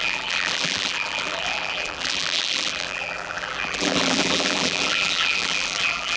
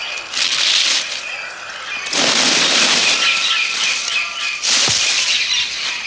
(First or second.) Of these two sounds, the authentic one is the second